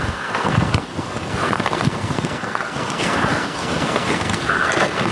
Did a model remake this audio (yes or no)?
yes